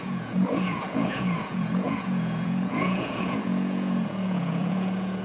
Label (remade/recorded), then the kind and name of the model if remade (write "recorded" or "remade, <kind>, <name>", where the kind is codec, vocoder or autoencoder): remade, vocoder, Vocos